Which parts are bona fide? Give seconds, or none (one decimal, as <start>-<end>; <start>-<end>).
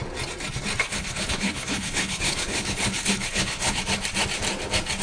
0.0-0.8; 3.8-5.0